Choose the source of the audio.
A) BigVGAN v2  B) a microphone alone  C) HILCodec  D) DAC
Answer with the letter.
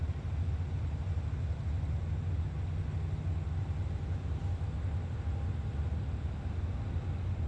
B